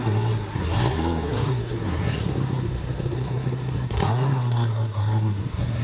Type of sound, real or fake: fake